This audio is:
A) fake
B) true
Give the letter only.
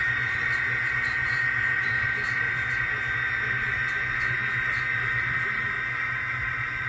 B